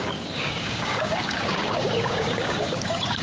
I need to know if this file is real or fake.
fake